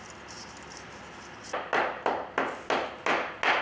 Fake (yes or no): no